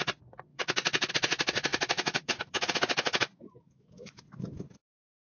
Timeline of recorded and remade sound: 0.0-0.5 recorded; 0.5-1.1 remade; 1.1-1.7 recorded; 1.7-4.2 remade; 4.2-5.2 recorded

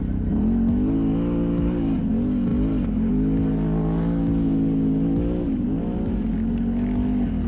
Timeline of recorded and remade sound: 0.0-7.5 recorded

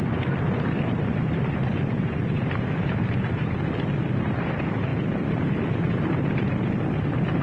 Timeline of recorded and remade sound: 0.0-7.4 remade

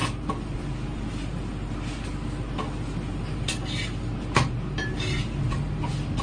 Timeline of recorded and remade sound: 0.0-6.2 recorded